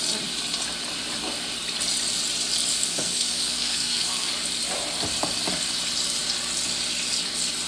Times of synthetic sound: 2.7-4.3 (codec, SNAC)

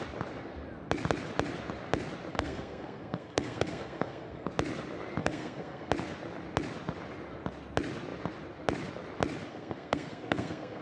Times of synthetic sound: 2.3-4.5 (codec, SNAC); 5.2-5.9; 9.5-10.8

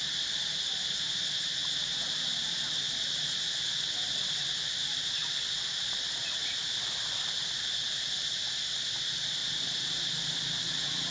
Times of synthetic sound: none

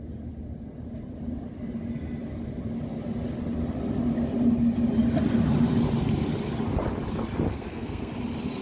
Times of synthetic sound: 7.5-8.1 (codec, SNAC)

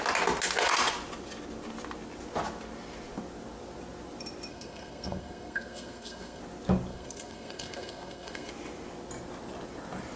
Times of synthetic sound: 4.5-6.4 (codec, SNAC); 6.9-8.5

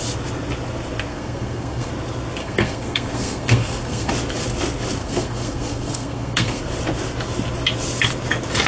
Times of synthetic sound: 1.1-1.9 (codec, SNAC); 2.4-4.1; 5.0-6.6

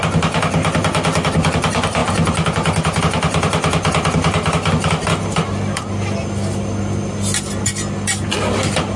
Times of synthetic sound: none